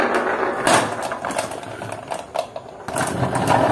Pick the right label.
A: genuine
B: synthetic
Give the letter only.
A